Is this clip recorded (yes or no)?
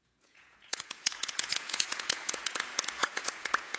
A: no